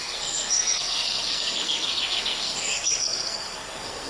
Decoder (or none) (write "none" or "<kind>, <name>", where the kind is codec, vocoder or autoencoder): codec, SNAC